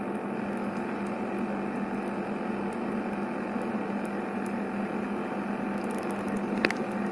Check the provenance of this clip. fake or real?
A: real